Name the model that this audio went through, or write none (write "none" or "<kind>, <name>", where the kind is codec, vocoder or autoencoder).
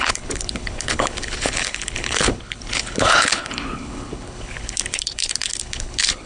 codec, HILCodec